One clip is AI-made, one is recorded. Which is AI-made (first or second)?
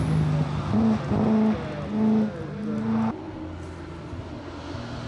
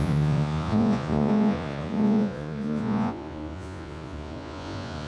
second